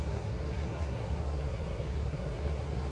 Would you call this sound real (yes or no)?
no